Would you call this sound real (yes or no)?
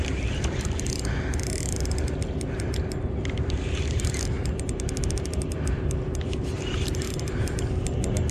yes